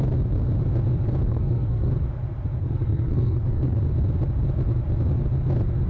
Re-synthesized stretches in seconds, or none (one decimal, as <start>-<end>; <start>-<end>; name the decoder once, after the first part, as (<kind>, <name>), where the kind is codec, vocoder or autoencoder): 1.3-1.9 (codec, SNAC); 2.6-3.8